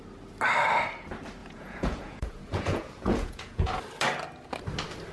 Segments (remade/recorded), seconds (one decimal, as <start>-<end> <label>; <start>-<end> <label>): 0.0-1.4 recorded; 1.4-3.7 remade; 3.7-5.1 recorded